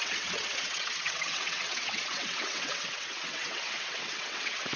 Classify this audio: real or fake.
fake